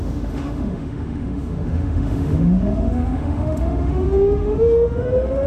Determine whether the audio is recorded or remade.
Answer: remade